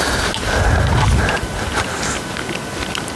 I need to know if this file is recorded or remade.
recorded